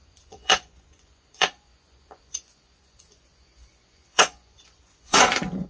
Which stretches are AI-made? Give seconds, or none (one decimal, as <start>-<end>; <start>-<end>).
0.0-5.7